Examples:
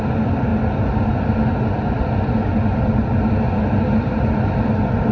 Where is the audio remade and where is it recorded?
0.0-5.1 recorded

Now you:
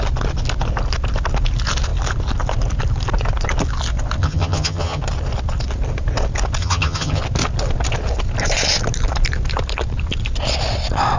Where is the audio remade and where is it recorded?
0.0-4.2 recorded; 4.2-5.0 remade; 5.0-6.6 recorded; 6.6-7.2 remade; 7.2-11.2 recorded

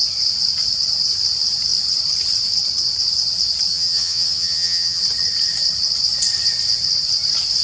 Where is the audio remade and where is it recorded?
0.0-3.7 recorded; 3.7-5.0 remade; 5.0-7.6 recorded